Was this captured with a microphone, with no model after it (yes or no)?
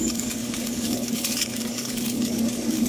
no